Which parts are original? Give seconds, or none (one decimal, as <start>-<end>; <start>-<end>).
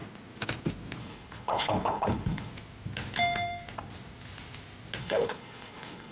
0.0-1.0; 2.5-5.0